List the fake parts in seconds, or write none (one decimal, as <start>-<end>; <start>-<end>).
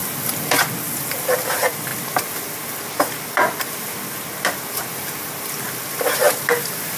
none